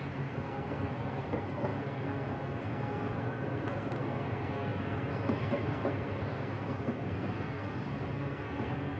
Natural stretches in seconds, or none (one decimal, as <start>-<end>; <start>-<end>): none